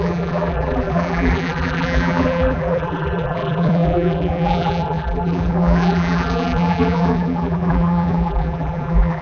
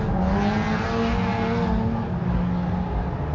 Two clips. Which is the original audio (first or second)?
second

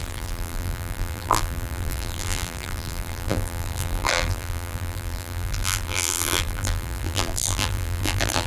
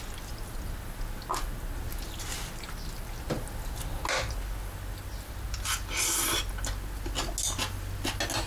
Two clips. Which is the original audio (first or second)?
second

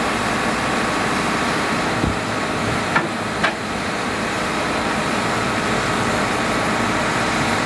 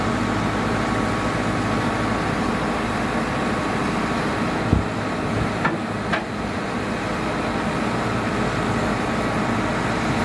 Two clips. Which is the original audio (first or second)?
second